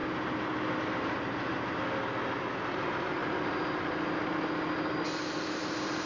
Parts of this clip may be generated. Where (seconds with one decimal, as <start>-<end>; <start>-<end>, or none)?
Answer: none